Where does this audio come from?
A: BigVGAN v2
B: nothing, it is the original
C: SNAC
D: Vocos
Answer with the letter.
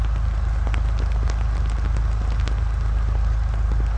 B